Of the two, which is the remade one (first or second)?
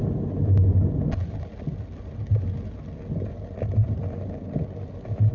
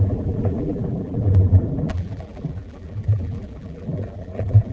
second